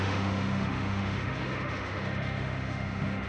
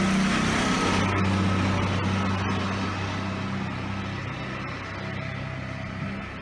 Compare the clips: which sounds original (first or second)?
second